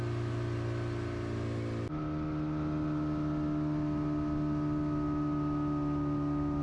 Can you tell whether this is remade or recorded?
recorded